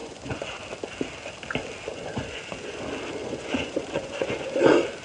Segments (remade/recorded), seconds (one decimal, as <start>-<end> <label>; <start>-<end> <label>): 0.0-0.6 remade; 0.6-1.9 recorded; 1.9-2.8 remade; 2.8-3.2 recorded; 3.2-4.6 remade; 4.6-5.0 recorded